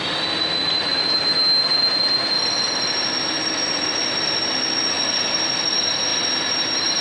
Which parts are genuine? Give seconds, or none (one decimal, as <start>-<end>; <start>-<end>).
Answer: 0.0-6.1